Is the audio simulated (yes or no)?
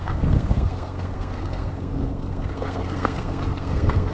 yes